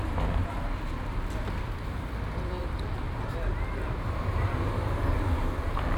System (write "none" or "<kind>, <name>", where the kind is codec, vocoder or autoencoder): none